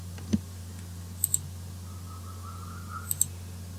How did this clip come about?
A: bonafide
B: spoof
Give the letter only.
A